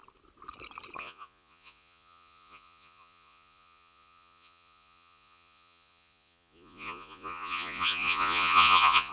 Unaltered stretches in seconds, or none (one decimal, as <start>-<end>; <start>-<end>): 0.0-1.0